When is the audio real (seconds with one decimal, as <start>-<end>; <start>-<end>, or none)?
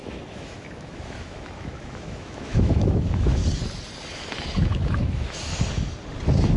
3.4-4.7; 5.5-6.6